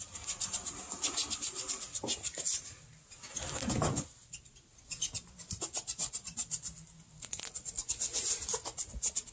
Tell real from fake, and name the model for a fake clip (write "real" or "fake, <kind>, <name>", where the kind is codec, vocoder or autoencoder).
real